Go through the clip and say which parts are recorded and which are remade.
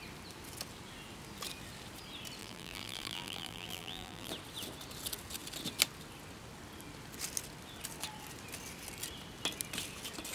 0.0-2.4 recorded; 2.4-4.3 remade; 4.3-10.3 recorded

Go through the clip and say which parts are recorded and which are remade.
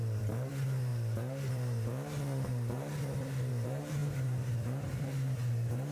0.0-0.9 remade; 0.9-1.5 recorded; 1.5-2.9 remade; 2.9-3.5 recorded; 3.5-5.9 remade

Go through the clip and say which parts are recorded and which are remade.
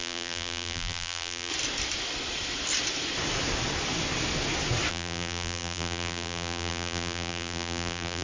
0.0-1.5 remade; 1.5-4.9 recorded; 4.9-8.2 remade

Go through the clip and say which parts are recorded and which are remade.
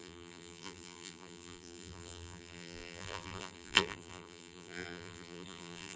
0.0-6.0 remade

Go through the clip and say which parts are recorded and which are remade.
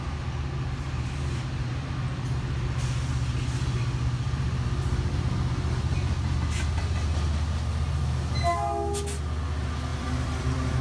0.0-9.9 recorded; 9.9-10.8 remade